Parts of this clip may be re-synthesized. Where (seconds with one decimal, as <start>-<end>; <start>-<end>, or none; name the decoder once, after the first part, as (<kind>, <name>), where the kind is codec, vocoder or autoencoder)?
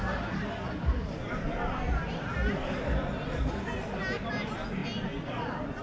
none